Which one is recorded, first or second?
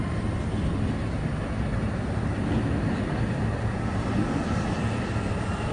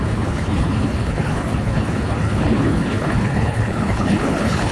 first